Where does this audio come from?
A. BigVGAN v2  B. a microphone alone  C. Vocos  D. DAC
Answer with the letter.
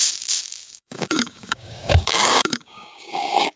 D